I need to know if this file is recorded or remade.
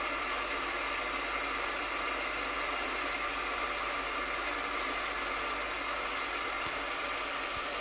recorded